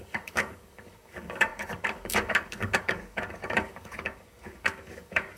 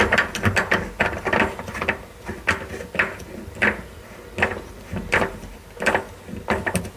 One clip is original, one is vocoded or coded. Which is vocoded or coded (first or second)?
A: first